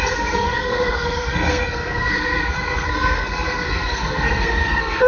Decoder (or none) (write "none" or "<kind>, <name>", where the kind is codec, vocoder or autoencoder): codec, SNAC